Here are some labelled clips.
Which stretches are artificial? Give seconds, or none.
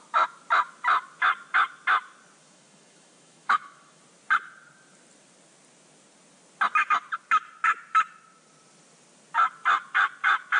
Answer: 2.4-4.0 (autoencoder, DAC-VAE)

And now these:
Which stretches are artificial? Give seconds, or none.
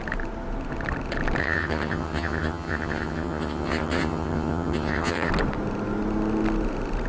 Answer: 1.4-5.3 (vocoder, HiFi-GAN)